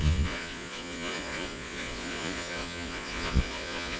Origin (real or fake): fake